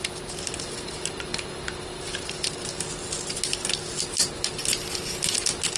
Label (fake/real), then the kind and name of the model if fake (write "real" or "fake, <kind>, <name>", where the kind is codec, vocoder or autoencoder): real